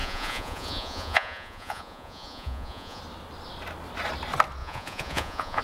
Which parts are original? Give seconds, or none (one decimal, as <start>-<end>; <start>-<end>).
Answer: 3.0-4.6